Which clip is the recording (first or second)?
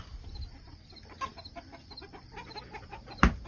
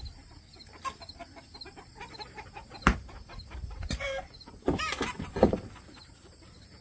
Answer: first